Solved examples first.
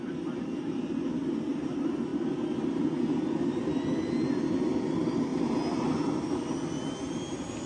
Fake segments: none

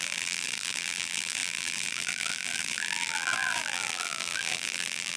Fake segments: 0.0-5.2 (vocoder, BigVGAN v2)

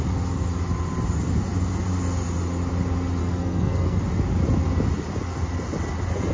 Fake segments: 3.2-4.0 (codec, SNAC)

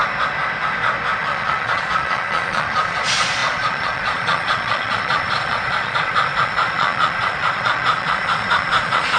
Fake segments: 1.2-9.2 (vocoder, Vocos)

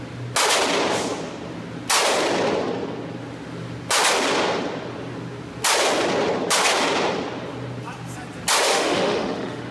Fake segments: 8.7-9.7 (autoencoder, DAC-VAE)

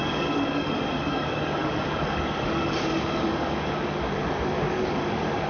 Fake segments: 0.0-5.5 (codec, DAC)